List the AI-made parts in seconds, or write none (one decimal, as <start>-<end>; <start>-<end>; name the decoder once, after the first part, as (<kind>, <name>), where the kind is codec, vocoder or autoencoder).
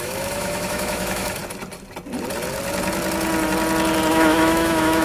0.0-1.4 (autoencoder, DAC-VAE); 4.1-5.0